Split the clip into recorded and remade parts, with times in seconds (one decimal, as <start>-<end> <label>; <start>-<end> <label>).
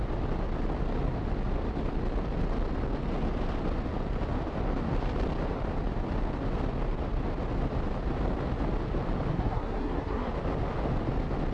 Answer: 0.0-9.3 recorded; 9.3-10.3 remade; 10.3-11.5 recorded